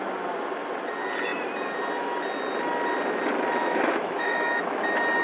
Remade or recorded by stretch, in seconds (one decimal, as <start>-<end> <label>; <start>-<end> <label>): 0.0-3.6 recorded; 3.6-4.8 remade; 4.8-5.2 recorded